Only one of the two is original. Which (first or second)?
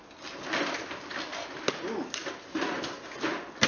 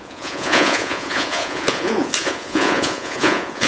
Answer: first